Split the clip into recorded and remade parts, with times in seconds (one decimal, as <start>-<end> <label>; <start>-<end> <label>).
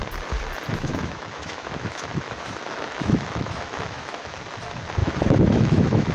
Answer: 0.0-0.7 recorded; 0.7-4.4 remade; 4.4-5.0 recorded; 5.0-6.1 remade